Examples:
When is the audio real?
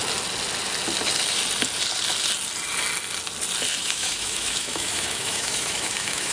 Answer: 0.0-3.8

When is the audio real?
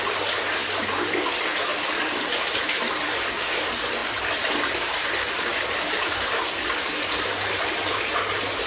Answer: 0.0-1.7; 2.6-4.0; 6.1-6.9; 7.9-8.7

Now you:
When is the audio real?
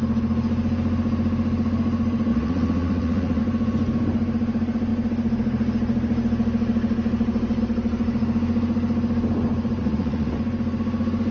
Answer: 0.0-2.3; 3.4-9.8; 10.4-11.3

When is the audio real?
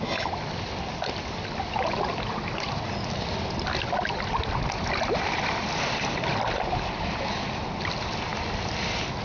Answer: 0.0-9.2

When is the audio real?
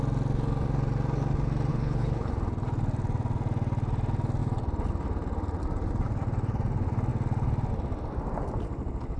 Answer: 0.0-1.7; 2.3-9.2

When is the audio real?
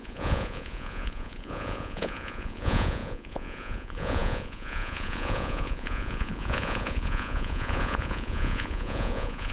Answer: none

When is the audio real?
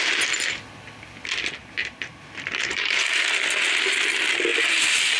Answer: 0.0-1.6; 3.1-5.2